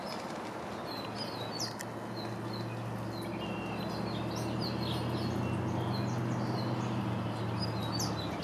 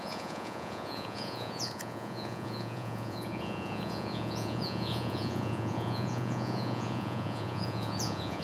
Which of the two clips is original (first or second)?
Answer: first